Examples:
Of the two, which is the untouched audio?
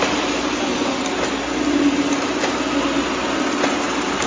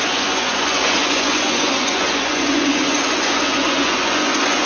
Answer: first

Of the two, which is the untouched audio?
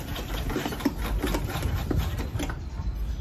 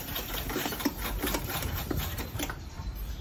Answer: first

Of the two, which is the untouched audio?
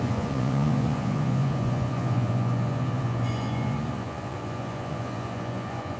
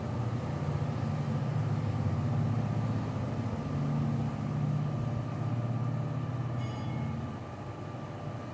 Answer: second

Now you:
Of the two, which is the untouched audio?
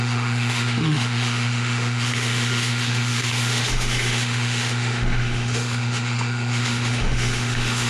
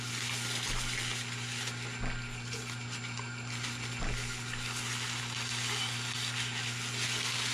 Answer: second